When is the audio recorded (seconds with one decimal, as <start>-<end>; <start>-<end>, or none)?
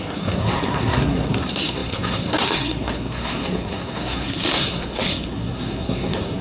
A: none